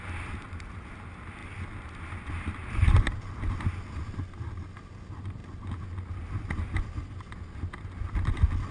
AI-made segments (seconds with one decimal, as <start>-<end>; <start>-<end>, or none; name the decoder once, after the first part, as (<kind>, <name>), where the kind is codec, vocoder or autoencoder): none